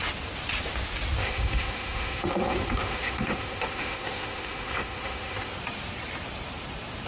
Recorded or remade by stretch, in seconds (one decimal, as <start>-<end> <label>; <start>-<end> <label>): 0.0-1.2 recorded; 1.2-5.5 remade; 5.5-7.1 recorded